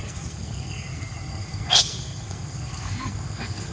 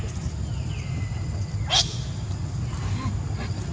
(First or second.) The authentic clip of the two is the second